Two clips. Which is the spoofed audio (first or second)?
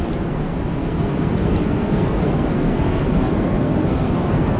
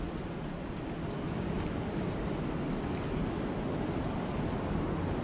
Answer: first